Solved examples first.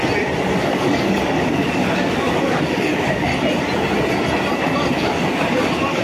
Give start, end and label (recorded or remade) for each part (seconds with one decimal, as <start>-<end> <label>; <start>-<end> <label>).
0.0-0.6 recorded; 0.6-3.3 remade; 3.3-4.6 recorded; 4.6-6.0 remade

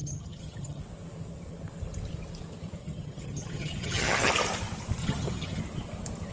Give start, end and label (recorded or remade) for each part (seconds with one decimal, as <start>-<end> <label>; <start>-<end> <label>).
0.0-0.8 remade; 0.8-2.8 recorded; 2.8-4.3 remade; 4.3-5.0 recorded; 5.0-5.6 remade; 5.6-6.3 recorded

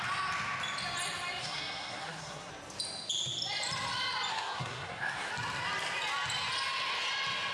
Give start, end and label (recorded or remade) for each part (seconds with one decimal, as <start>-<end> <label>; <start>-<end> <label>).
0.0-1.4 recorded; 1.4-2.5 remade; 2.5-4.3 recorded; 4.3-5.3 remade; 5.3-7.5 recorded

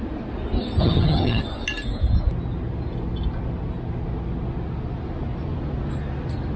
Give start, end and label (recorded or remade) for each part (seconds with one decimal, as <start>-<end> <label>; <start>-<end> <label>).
0.0-0.8 recorded; 0.8-1.4 remade; 1.4-6.6 recorded

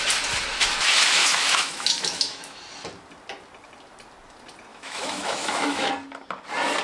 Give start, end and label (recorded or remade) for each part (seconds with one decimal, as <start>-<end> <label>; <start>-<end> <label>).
0.0-1.2 recorded; 1.2-2.6 remade; 2.6-4.7 recorded; 4.7-5.9 remade; 5.9-6.8 recorded

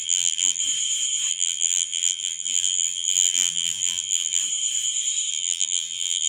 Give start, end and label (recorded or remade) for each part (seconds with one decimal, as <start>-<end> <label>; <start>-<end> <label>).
0.0-0.6 remade; 0.6-1.3 recorded; 1.3-4.4 remade; 4.4-5.3 recorded; 5.3-6.3 remade

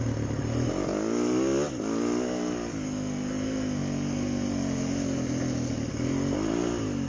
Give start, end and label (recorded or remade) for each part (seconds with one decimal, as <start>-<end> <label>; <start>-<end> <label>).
0.0-7.1 recorded